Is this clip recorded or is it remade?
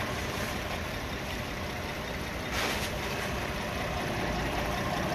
recorded